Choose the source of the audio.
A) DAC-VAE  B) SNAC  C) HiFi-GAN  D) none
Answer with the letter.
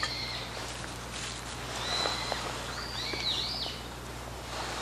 D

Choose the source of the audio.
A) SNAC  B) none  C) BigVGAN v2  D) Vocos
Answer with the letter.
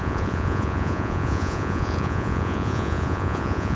D